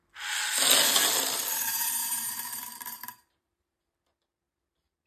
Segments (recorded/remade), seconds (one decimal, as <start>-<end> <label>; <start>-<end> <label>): 0.0-2.0 recorded; 2.0-3.8 remade; 3.8-5.1 recorded